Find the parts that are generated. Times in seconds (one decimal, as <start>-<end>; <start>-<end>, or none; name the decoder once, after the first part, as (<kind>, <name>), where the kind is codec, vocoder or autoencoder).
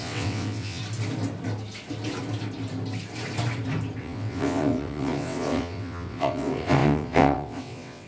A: 0.0-0.8 (vocoder, WaveNeXt); 4.0-8.1